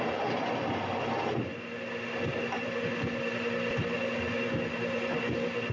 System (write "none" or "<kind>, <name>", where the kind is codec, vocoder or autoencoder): none